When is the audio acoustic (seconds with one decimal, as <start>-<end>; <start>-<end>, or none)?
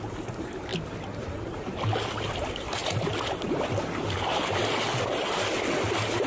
0.0-6.3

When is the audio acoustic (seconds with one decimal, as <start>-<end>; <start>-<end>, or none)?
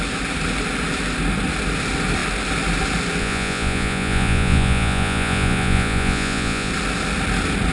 0.0-3.2; 6.7-7.7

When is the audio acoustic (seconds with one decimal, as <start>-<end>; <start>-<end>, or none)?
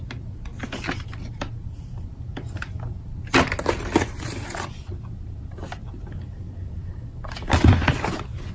0.0-8.5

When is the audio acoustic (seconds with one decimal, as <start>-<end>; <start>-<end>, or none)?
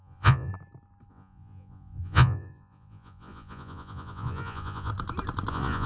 0.5-1.1; 4.9-5.5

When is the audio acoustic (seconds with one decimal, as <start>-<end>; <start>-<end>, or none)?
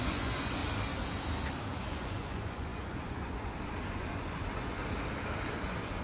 0.6-1.9; 4.8-5.5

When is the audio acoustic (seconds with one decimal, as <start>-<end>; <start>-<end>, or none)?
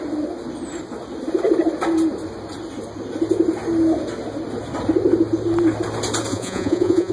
0.0-6.3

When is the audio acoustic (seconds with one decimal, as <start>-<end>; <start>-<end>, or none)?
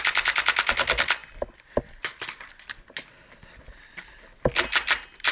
0.0-5.3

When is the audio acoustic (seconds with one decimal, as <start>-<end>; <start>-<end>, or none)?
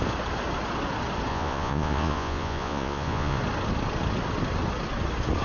0.0-1.3; 3.4-5.4